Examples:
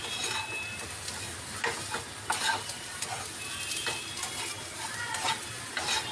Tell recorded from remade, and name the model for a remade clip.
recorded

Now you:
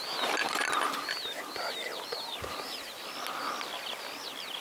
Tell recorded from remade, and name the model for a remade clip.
recorded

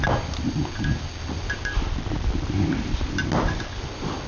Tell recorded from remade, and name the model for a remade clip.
recorded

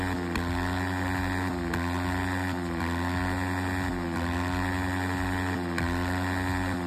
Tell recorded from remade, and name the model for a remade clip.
recorded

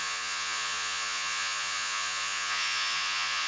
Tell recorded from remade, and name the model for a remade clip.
remade, vocoder, Vocos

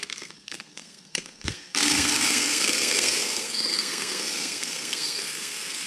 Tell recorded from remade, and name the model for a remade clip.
remade, codec, SNAC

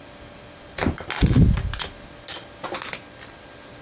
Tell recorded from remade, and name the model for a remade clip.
recorded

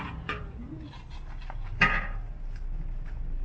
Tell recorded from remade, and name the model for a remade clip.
recorded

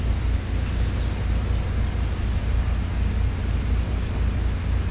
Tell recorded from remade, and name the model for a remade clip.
recorded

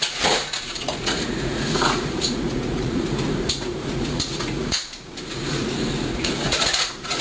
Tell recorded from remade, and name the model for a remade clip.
remade, vocoder, Vocos